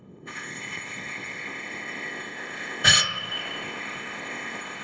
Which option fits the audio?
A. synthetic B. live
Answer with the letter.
A